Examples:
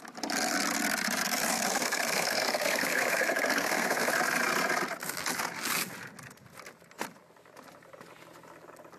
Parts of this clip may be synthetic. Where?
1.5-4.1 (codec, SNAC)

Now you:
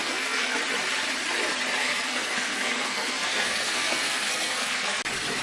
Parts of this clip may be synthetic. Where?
0.0-0.6 (codec, SNAC); 1.8-5.0

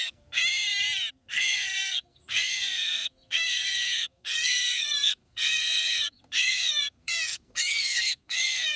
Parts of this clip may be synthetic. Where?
0.0-0.4 (codec, SNAC); 1.1-8.8